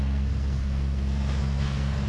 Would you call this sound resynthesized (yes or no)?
yes